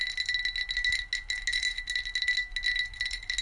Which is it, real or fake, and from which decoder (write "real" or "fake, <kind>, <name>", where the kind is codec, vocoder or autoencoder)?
real